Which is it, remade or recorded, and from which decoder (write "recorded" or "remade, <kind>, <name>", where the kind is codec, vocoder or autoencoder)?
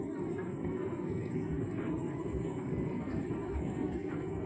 remade, codec, SNAC